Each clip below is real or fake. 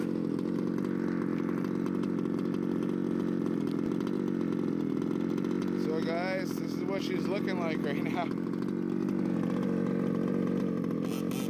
real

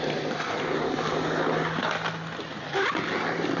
real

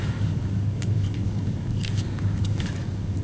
fake